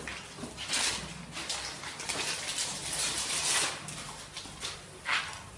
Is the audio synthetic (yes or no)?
no